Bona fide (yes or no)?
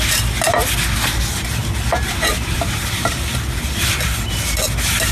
yes